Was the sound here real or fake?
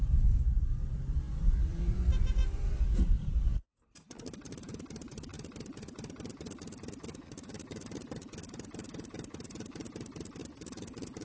real